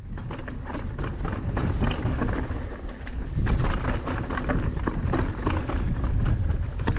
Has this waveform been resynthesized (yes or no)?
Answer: no